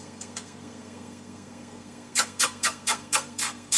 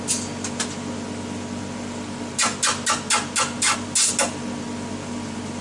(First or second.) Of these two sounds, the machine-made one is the first